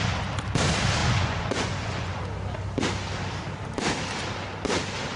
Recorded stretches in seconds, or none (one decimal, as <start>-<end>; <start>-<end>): 0.0-1.0; 2.2-5.2